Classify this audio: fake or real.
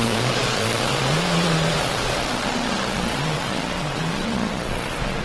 fake